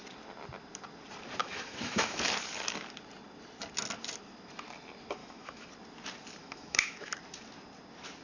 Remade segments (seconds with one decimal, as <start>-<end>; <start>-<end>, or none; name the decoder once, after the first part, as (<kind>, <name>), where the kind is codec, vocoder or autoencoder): 1.4-2.3 (autoencoder, DAC-VAE); 5.2-5.7; 6.4-7.1